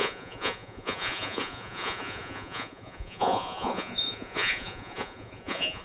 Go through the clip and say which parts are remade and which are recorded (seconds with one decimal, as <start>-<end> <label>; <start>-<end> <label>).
0.0-5.8 remade